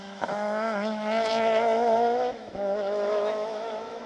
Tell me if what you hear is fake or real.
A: fake